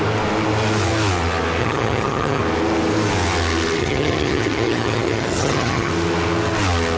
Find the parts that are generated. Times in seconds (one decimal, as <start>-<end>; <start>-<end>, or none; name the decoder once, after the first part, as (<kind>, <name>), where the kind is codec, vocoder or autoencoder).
1.6-2.4 (vocoder, HiFi-GAN); 3.8-5.9